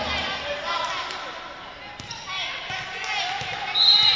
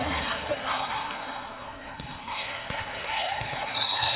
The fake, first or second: second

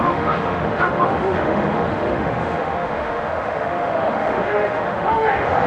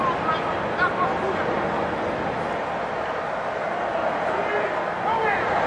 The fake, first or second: first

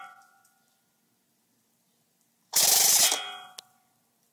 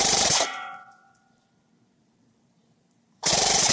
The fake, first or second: second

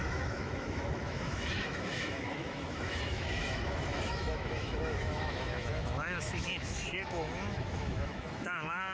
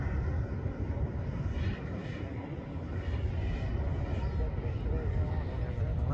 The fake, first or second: first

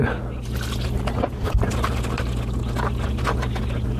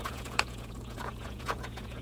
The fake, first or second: second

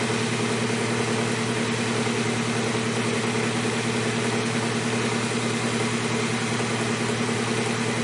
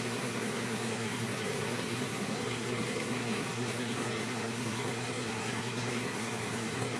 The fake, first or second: second